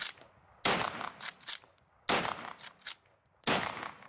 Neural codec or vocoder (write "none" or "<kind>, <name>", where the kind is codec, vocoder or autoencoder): none